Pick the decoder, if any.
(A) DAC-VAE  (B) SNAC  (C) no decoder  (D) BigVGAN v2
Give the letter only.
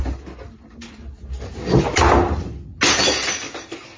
C